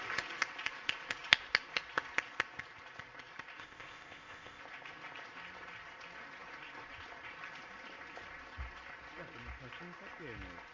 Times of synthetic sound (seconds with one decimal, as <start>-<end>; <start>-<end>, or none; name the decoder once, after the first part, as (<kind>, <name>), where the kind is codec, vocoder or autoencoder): 3.6-4.6 (codec, ZipCodec)